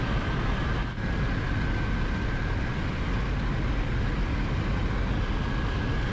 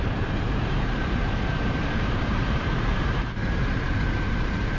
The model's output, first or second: second